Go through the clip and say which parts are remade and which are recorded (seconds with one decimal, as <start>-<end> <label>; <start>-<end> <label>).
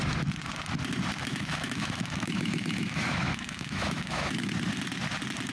0.0-1.2 recorded; 1.2-4.5 remade; 4.5-5.5 recorded